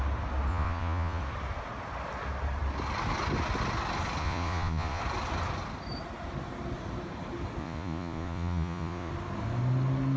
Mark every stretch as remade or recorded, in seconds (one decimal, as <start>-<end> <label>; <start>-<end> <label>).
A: 0.0-0.5 recorded; 0.5-1.2 remade; 1.2-4.2 recorded; 4.2-5.0 remade; 5.0-7.6 recorded; 7.6-9.1 remade; 9.1-10.2 recorded